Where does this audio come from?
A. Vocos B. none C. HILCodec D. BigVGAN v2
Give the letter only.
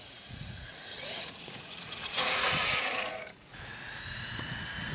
A